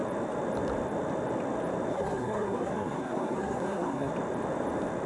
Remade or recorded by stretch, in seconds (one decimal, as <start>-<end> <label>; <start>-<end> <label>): 0.0-1.9 recorded; 1.9-4.1 remade; 4.1-5.1 recorded